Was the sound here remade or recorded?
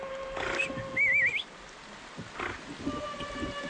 recorded